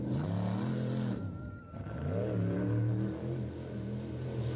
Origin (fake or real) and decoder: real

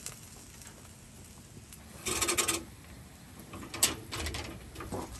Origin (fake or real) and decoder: real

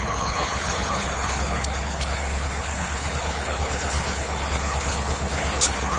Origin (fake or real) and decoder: fake, codec, HILCodec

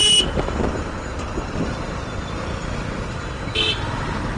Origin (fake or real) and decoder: real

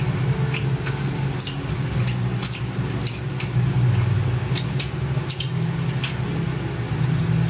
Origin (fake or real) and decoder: real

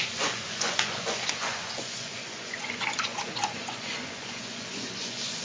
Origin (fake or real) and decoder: fake, vocoder, Vocos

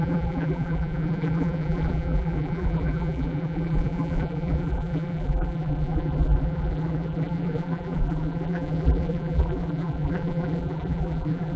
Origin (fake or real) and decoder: fake, vocoder, BigVGAN v2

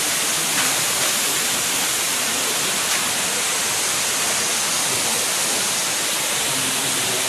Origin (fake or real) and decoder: real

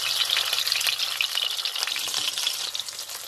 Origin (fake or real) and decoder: real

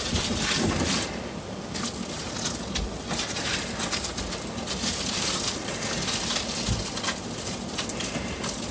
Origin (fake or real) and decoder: real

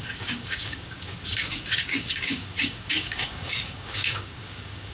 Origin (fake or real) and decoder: fake, codec, DAC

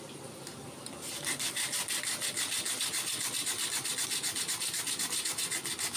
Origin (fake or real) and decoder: real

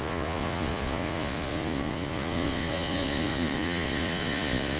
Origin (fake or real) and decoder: fake, vocoder, Vocos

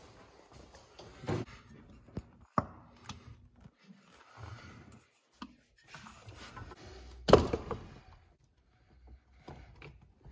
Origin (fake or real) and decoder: real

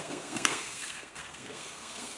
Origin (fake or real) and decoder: fake, codec, SNAC